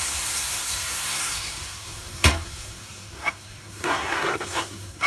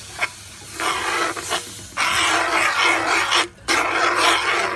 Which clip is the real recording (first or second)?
second